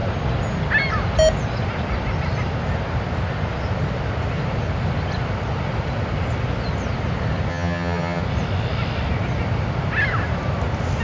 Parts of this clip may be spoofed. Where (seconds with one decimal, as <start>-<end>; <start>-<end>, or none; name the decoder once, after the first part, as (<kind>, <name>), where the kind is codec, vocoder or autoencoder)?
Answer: 7.5-8.2 (vocoder, HiFi-GAN)